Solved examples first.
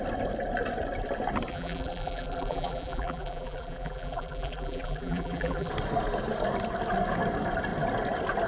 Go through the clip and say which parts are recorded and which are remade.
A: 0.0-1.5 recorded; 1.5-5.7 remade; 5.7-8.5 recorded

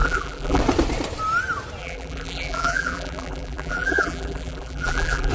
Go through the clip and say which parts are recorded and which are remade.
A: 0.0-0.6 remade; 0.6-1.8 recorded; 1.8-5.3 remade

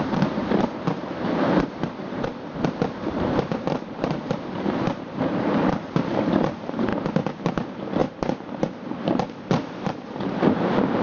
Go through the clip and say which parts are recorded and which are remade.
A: 0.0-6.9 remade; 6.9-7.5 recorded; 7.5-11.0 remade

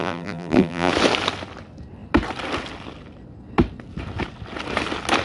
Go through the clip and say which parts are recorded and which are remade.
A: 0.0-0.9 remade; 0.9-5.2 recorded